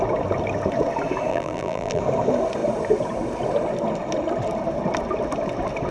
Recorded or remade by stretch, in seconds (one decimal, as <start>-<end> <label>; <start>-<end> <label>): 0.0-1.3 recorded; 1.3-2.0 remade; 2.0-5.9 recorded